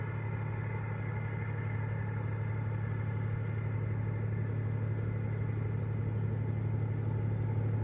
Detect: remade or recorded recorded